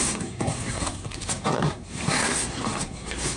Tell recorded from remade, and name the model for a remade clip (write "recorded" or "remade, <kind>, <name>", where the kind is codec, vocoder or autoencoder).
remade, codec, SNAC